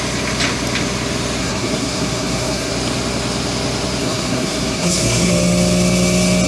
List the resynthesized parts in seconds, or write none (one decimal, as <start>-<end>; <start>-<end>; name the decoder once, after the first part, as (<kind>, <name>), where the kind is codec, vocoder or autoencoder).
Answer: 1.4-2.7 (codec, SNAC); 4.0-5.3